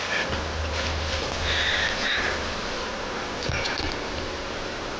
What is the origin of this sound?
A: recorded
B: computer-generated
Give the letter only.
A